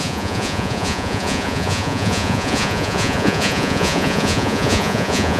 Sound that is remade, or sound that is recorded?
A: remade